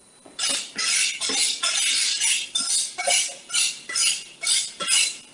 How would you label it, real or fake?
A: real